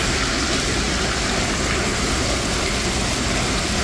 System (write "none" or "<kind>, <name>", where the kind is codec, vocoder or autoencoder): none